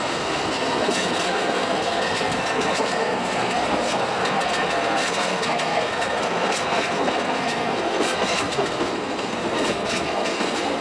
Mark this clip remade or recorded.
remade